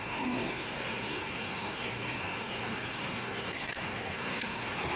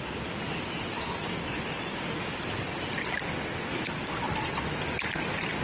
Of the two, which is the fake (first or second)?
first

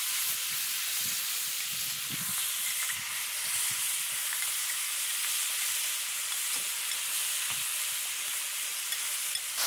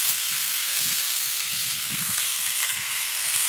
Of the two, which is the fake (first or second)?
second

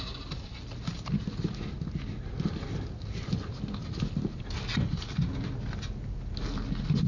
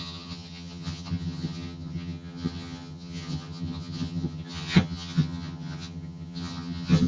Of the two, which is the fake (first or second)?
second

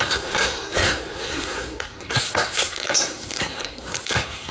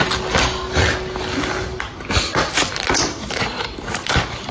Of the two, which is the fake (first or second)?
first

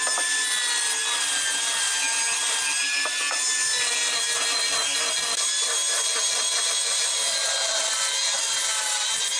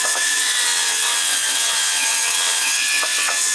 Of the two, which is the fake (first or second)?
second